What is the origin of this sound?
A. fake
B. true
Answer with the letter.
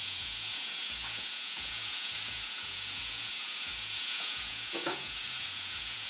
A